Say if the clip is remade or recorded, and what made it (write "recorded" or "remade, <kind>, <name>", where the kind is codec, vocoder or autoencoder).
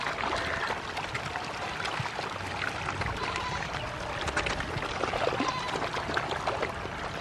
recorded